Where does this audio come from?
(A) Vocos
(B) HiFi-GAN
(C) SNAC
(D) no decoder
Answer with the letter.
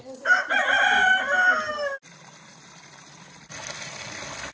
D